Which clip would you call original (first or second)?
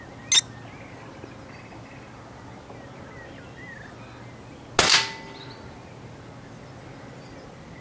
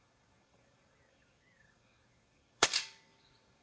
first